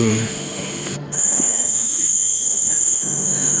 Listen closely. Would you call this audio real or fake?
fake